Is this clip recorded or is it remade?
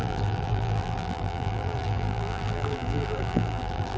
remade